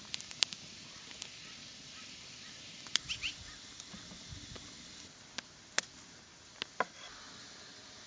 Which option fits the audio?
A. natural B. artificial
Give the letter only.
A